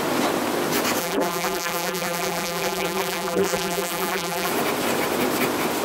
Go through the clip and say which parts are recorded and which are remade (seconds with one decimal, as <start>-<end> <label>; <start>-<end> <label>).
0.0-1.0 recorded; 1.0-4.5 remade; 4.5-5.8 recorded